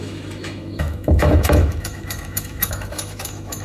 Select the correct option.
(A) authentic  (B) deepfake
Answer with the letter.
B